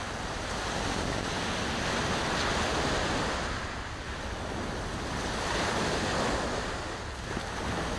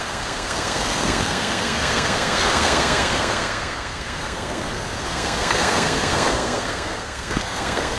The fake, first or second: second